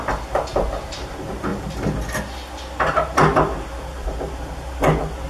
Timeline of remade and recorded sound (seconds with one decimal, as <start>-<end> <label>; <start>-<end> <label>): 0.0-5.3 recorded